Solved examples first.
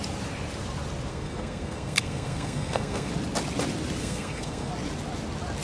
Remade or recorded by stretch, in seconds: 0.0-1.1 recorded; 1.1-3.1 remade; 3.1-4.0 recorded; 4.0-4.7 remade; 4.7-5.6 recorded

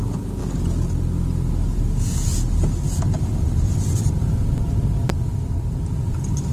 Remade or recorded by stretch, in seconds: 0.0-6.5 recorded

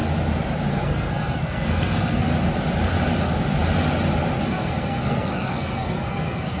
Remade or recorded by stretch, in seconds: 0.0-0.7 recorded; 0.7-2.3 remade; 2.3-4.4 recorded; 4.4-6.6 remade

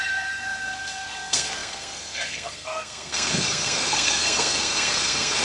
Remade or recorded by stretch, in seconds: 0.0-5.4 remade

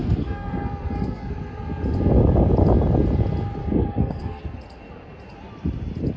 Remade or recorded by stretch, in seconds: 0.0-1.3 remade; 1.3-3.6 recorded; 3.6-4.4 remade; 4.4-6.2 recorded